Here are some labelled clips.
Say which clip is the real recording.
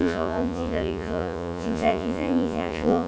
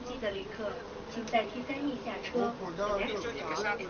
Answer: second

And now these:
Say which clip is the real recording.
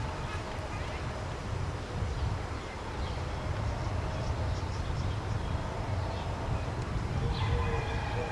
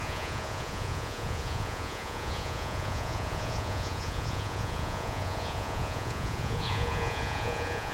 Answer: first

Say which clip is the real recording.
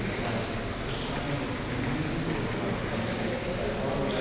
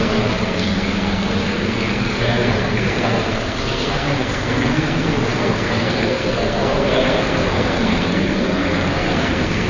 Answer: first